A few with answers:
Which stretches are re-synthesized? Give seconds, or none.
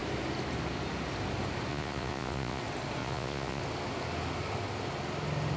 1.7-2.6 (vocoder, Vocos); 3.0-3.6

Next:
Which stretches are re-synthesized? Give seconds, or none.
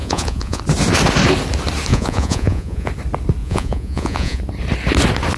0.0-0.6 (vocoder, Vocos); 1.9-2.9; 3.4-4.4